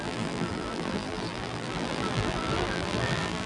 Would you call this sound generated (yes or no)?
yes